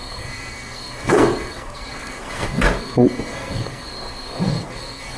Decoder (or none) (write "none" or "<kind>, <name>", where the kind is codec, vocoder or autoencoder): codec, SNAC